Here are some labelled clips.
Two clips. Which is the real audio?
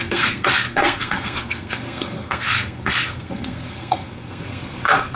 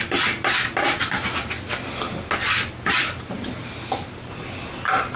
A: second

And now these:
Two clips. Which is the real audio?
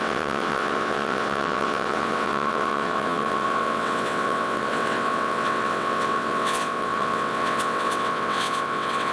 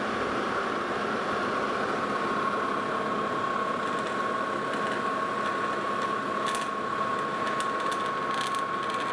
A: second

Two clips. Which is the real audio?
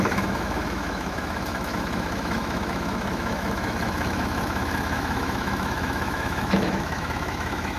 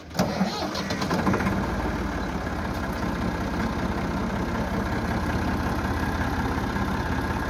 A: second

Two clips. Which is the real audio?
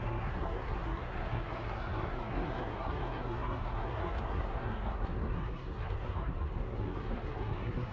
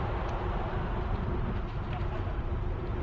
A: second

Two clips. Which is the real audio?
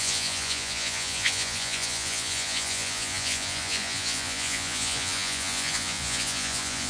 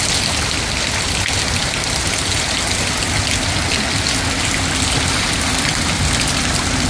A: second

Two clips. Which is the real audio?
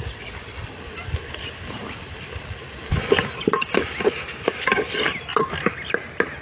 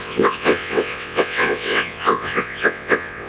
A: first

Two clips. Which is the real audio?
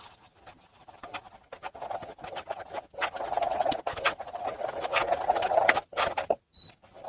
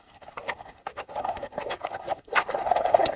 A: first